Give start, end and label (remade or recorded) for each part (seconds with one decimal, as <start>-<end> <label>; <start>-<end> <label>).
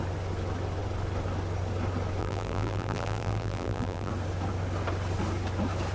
0.0-2.2 recorded; 2.2-4.1 remade; 4.1-5.9 recorded